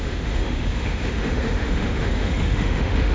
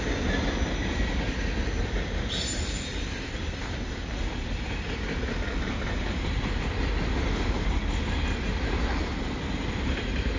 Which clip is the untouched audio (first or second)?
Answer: second